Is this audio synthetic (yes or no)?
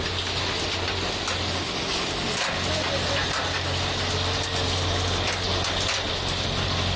no